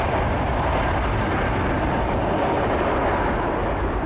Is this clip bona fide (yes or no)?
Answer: yes